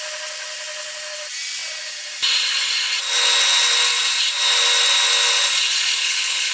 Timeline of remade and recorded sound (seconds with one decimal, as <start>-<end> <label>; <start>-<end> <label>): 0.0-6.0 recorded; 6.0-6.5 remade